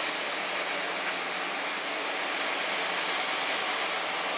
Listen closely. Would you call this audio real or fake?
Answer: real